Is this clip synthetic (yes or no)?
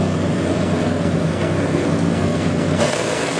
yes